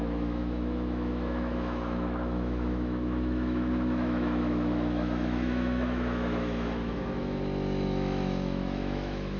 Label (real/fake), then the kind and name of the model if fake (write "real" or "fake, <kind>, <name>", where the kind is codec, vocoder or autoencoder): fake, autoencoder, DAC-VAE